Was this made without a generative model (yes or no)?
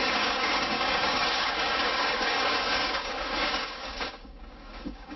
no